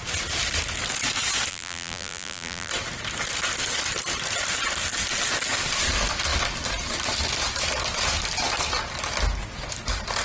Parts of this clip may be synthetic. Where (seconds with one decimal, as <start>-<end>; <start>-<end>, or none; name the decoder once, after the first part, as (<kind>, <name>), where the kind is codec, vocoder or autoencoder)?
1.5-2.7 (vocoder, BigVGAN v2)